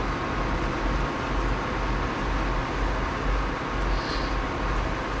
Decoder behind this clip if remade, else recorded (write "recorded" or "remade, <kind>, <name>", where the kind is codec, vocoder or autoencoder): recorded